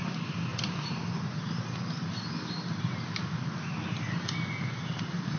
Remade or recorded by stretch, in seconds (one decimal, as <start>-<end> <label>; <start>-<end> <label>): 0.0-5.4 recorded